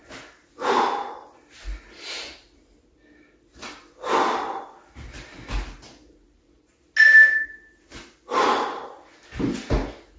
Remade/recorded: recorded